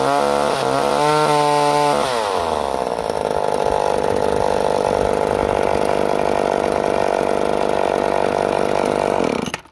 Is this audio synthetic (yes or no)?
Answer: no